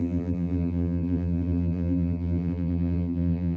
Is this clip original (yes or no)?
no